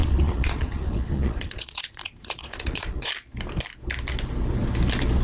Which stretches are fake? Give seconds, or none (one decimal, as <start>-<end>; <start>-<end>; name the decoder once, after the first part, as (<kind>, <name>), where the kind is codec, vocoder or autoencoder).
0.0-3.1 (vocoder, Vocos)